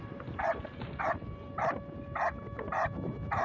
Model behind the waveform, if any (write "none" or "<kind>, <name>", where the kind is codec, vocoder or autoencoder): none